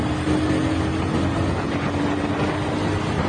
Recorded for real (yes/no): yes